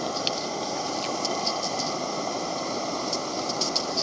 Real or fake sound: real